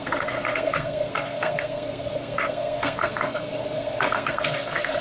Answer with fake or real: fake